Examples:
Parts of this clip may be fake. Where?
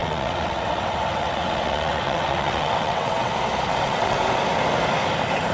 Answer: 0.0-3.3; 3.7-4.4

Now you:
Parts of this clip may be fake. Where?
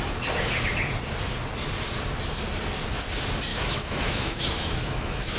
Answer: 3.5-5.4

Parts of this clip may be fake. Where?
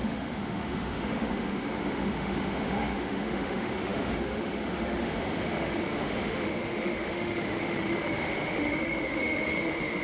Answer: 0.0-10.0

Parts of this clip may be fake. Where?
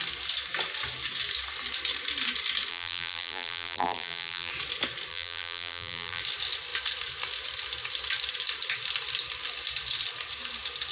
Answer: 2.7-4.5; 5.1-6.2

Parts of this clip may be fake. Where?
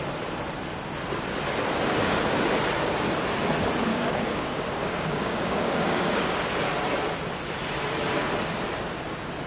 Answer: 3.9-6.4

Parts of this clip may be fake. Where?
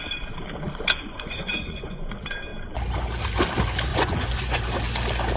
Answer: 1.0-2.1; 3.9-4.6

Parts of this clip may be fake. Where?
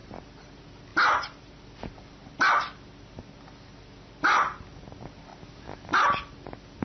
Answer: 0.0-0.5